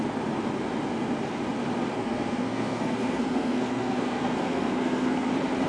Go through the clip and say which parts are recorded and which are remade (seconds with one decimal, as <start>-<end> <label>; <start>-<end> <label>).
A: 0.0-1.9 recorded; 1.9-5.3 remade; 5.3-5.7 recorded